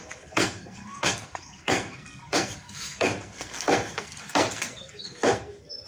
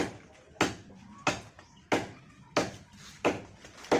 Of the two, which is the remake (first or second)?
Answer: first